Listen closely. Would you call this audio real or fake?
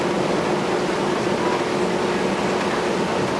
real